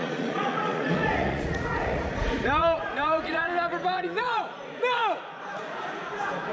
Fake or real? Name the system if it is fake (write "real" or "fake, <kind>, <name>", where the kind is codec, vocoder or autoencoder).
fake, vocoder, Vocos